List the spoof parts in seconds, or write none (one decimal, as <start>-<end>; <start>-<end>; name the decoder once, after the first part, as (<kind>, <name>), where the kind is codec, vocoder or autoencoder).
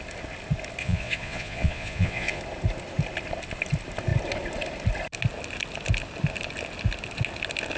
0.8-2.4 (vocoder, Vocos)